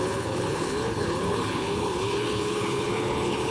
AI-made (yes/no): yes